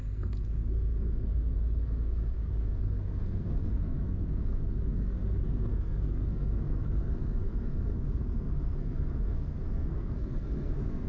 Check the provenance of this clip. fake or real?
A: fake